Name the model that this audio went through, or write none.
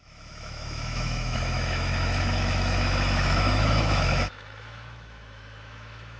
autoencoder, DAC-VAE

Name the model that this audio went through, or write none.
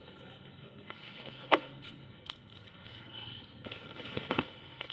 codec, SNAC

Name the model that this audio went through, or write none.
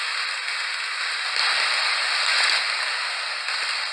none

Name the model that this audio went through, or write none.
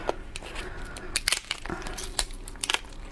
none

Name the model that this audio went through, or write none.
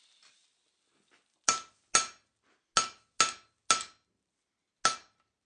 none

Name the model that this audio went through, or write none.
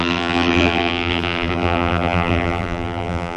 vocoder, BigVGAN v2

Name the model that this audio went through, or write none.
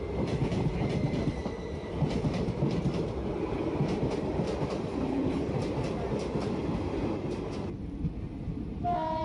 none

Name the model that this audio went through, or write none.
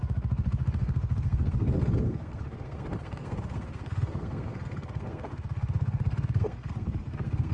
codec, SNAC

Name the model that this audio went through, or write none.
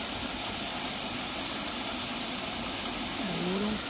none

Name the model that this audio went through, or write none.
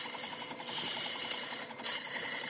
vocoder, BigVGAN v2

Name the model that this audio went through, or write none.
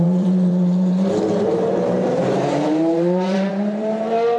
vocoder, BigVGAN v2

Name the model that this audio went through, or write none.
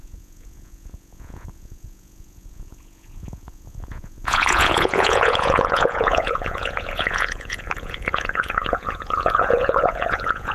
vocoder, Vocos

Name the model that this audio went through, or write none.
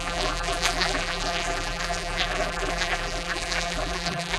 vocoder, BigVGAN v2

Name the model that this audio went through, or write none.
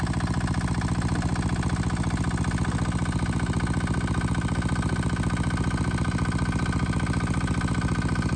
none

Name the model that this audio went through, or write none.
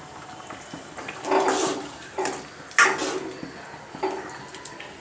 none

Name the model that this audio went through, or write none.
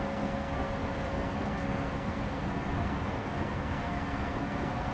codec, SNAC